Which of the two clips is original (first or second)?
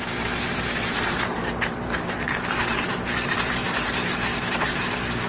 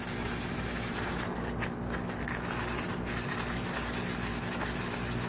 second